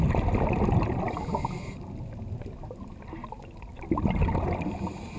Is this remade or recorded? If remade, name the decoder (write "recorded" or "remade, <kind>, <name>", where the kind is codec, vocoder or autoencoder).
recorded